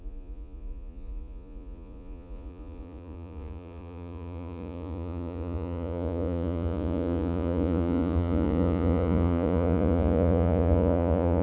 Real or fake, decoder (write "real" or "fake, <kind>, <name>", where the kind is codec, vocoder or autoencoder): fake, vocoder, Vocos